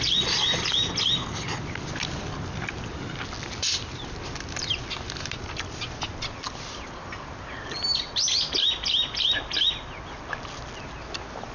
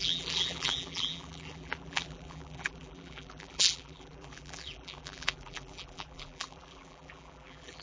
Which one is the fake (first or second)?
second